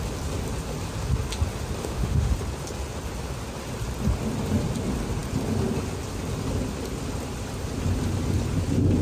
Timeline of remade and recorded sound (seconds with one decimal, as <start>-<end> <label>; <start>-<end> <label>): 0.0-1.8 recorded; 1.8-2.3 remade; 2.3-9.0 recorded